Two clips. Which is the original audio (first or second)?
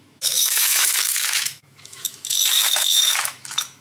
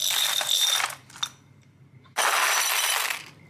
second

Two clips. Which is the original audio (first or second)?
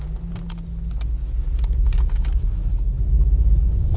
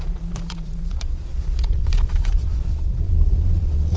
first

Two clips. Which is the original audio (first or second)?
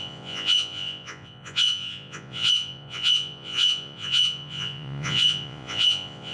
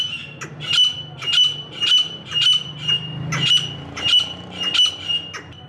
second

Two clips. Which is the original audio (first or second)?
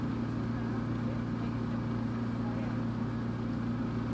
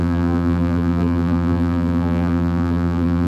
first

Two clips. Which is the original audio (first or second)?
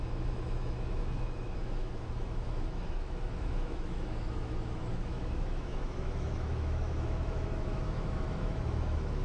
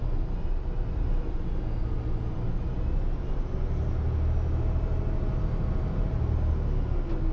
second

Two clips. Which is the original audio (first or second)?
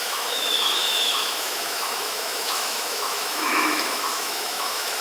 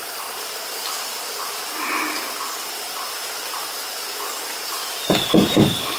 second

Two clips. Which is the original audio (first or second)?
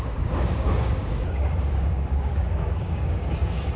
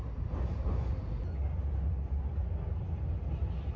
second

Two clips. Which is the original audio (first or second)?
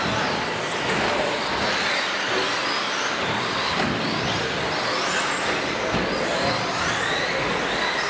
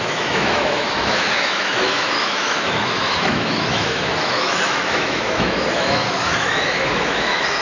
first